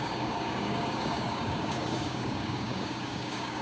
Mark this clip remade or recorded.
remade